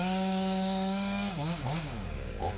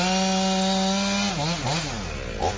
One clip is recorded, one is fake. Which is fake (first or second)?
first